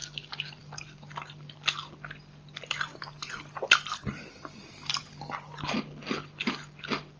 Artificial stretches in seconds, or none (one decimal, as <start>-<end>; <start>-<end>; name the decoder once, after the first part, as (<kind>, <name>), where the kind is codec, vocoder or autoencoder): 0.0-2.9 (vocoder, BigVGAN v2); 3.7-7.2